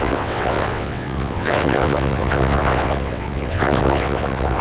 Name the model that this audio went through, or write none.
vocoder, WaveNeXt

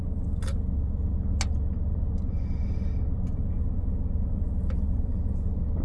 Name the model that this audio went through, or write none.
none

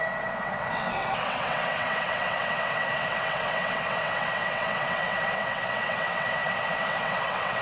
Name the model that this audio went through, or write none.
vocoder, WaveNeXt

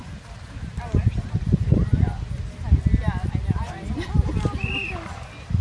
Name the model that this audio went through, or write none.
none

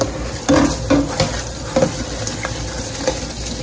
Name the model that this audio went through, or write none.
none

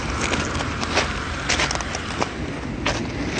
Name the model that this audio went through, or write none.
none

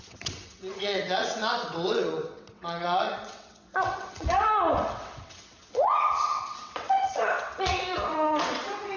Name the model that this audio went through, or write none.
vocoder, WaveNeXt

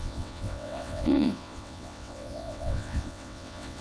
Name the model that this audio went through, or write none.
vocoder, WaveNeXt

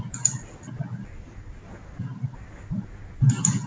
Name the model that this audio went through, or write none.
none